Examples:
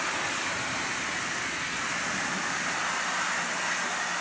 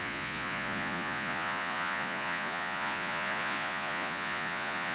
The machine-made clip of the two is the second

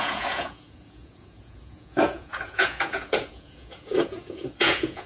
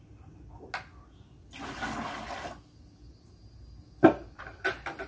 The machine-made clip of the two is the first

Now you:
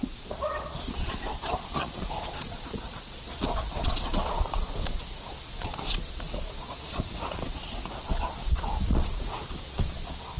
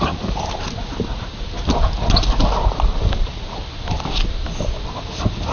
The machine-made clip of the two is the first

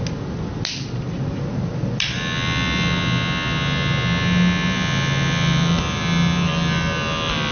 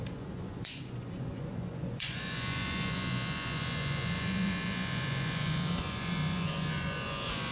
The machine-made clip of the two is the second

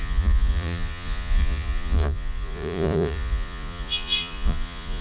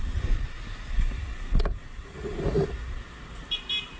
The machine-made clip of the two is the first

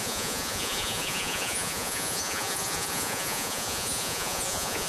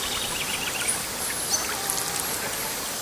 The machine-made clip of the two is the first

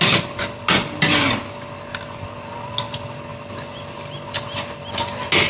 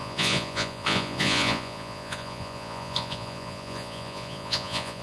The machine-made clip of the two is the second